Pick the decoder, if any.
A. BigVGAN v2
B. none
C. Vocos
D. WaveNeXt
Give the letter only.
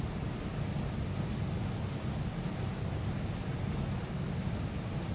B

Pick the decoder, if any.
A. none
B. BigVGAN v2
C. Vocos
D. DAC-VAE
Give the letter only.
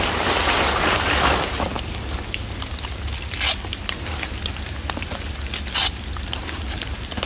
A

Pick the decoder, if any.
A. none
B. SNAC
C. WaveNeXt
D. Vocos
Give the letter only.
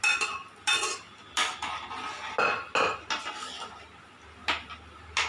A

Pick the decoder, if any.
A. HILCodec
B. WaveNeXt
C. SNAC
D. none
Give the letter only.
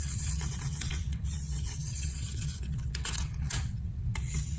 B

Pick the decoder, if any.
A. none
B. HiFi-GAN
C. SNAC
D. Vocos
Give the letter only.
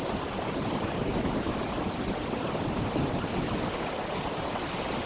A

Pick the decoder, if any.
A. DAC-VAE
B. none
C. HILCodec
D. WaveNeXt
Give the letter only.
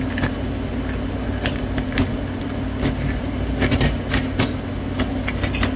B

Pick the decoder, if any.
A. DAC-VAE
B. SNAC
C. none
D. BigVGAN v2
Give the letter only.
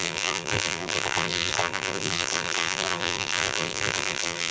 D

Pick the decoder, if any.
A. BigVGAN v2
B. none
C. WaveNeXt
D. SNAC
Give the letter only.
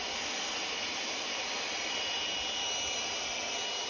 B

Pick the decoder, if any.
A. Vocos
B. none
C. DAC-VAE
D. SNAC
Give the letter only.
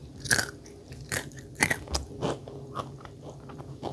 B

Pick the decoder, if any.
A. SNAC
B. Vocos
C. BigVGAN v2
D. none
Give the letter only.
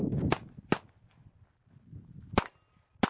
D